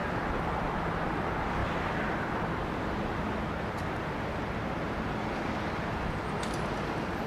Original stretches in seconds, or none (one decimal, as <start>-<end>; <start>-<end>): 0.0-7.3